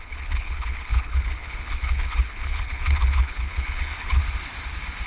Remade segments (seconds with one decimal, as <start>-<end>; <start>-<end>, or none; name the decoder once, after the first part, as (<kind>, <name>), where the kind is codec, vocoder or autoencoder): 0.0-4.2 (codec, HILCodec)